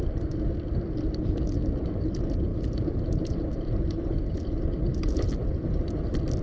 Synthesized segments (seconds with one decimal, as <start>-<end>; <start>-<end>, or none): 2.5-5.3